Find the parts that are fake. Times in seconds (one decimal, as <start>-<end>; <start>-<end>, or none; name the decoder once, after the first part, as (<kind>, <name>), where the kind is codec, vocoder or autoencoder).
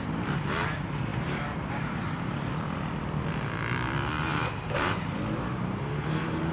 0.0-2.5 (vocoder, BigVGAN v2); 4.2-6.5